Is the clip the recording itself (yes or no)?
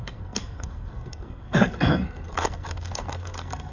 no